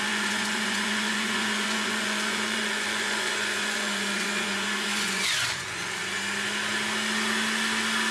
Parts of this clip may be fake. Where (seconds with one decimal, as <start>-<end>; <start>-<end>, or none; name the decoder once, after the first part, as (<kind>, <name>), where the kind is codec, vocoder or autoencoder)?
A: 0.0-6.0 (vocoder, Vocos)